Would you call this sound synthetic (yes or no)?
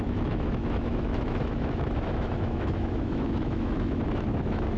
yes